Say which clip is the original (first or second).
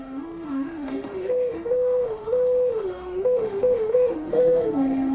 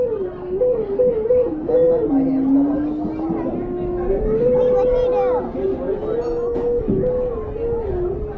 second